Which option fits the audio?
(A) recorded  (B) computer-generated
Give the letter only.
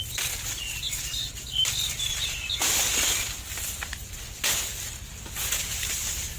A